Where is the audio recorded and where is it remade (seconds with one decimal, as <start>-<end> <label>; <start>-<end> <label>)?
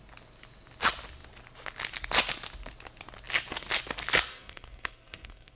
0.0-4.3 recorded; 4.3-5.6 remade